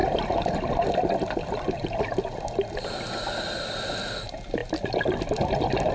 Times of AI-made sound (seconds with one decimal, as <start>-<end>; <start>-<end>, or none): none